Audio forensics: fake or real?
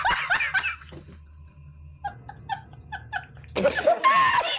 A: real